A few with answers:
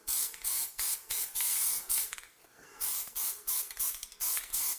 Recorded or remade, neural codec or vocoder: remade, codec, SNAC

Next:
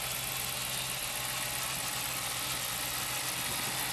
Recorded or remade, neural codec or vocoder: recorded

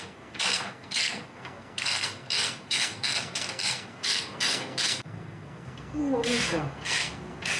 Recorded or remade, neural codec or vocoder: remade, codec, SNAC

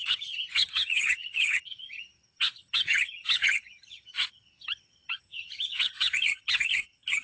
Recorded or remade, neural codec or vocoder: remade, vocoder, HiFi-GAN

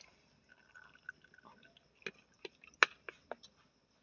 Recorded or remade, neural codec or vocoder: recorded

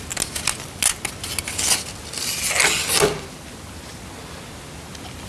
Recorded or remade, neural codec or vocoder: recorded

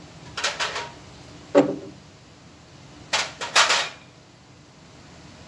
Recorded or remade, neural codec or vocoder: recorded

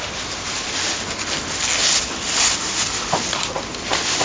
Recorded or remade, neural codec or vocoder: recorded